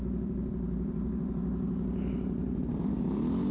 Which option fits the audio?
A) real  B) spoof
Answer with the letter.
A